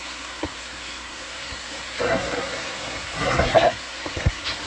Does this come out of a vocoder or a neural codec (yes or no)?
yes